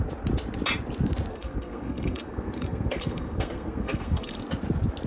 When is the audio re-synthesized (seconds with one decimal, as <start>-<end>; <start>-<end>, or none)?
1.3-4.4